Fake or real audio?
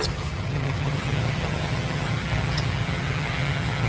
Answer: fake